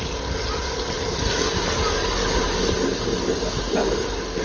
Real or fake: real